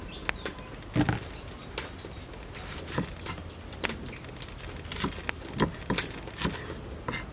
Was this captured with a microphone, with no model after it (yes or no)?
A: yes